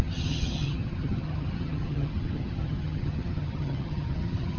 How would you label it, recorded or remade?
remade